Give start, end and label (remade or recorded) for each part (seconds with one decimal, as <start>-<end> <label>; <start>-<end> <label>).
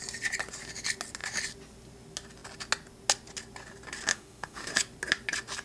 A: 0.0-4.1 recorded; 4.1-4.7 remade; 4.7-5.6 recorded